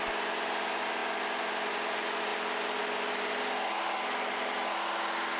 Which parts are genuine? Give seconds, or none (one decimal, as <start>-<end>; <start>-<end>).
0.0-5.4